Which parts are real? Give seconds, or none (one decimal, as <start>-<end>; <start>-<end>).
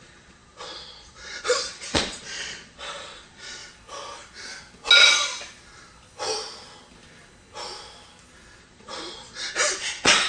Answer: 3.6-8.6